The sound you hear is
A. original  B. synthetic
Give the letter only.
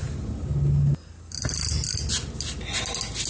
A